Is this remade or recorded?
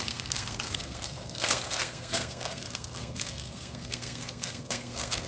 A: remade